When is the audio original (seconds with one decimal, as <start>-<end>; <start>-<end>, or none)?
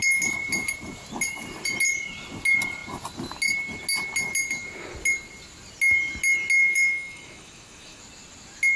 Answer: 0.0-6.6; 8.0-8.8